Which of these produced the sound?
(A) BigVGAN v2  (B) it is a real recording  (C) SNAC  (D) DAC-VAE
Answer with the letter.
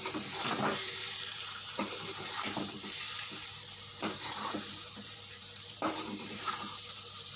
A